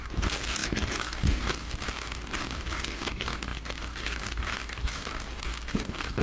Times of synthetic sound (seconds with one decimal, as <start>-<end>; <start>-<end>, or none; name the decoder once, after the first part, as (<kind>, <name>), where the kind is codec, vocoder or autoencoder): 0.0-6.2 (codec, DAC)